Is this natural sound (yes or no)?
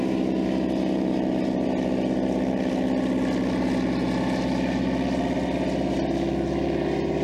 yes